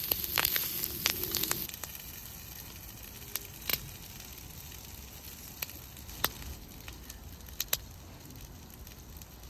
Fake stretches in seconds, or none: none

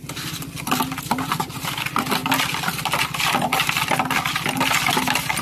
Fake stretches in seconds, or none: none

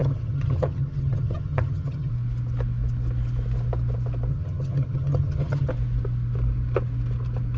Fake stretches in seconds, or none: 0.0-2.1 (vocoder, HiFi-GAN); 4.3-5.7